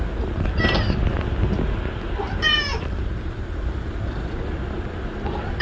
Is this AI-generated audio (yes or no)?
no